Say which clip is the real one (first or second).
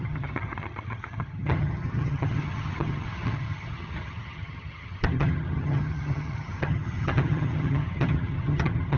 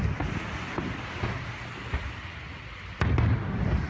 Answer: second